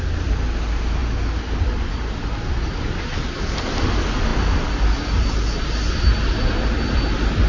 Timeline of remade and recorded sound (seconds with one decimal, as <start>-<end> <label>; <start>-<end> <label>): 0.0-7.5 recorded